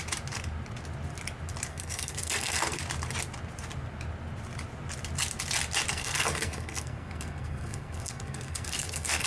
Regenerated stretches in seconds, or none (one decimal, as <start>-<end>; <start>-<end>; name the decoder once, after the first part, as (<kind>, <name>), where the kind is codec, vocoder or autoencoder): 1.7-2.8 (codec, SNAC); 5.9-9.3